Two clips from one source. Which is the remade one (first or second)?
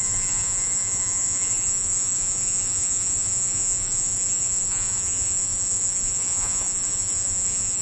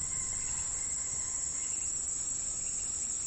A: first